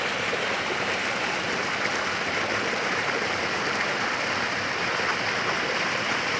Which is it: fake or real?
real